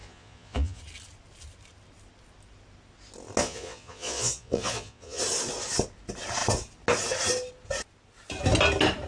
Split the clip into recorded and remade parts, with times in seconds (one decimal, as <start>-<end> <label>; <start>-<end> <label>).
0.0-0.8 remade; 0.8-3.4 recorded; 3.4-5.2 remade; 5.2-9.1 recorded